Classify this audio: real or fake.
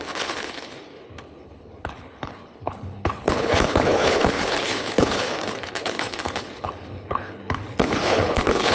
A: fake